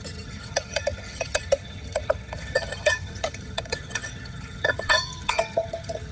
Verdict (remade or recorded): remade